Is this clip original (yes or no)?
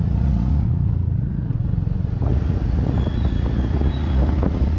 no